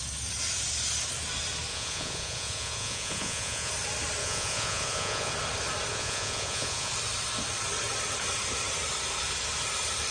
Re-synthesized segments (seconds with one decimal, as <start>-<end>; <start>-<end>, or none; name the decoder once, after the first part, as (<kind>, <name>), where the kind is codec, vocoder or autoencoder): 1.7-3.7 (vocoder, Vocos); 4.2-5.3; 5.9-6.9